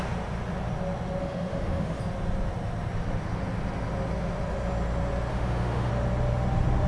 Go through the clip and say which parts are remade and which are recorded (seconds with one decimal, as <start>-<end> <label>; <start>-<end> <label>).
0.0-1.2 recorded; 1.2-2.0 remade; 2.0-5.3 recorded; 5.3-5.9 remade; 5.9-6.9 recorded